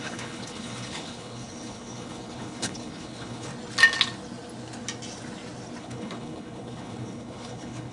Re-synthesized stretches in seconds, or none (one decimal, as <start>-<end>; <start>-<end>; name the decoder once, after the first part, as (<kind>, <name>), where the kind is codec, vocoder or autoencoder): 0.0-3.5 (codec, HILCodec); 5.8-7.9